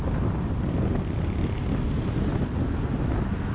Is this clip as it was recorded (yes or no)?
yes